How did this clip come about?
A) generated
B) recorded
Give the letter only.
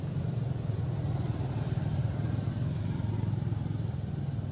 B